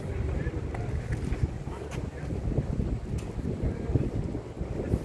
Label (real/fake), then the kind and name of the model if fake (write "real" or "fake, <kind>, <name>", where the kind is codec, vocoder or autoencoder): real